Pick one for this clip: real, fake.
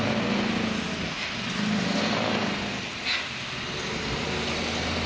real